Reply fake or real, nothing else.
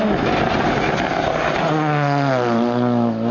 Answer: real